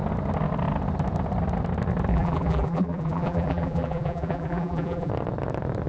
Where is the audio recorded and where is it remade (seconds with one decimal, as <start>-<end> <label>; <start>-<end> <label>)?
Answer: 0.0-2.1 recorded; 2.1-5.1 remade; 5.1-5.9 recorded